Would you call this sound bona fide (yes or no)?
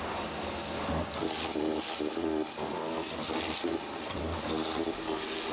yes